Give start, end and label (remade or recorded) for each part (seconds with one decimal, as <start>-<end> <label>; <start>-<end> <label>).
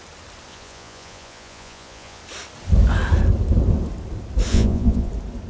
0.0-0.5 recorded; 0.5-2.2 remade; 2.2-4.5 recorded; 4.5-5.1 remade; 5.1-5.5 recorded